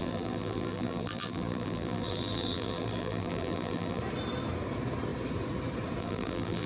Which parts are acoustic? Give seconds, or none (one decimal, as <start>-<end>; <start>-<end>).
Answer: 4.0-6.0